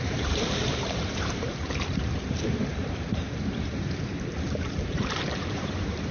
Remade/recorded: remade